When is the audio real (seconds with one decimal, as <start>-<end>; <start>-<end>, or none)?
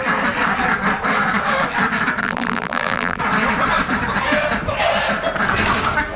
0.0-2.2; 3.2-6.2